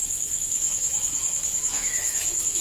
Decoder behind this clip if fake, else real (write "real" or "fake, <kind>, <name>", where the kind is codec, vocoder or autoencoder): fake, autoencoder, DAC-VAE